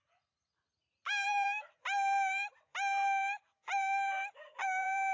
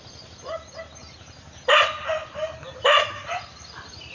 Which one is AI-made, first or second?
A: first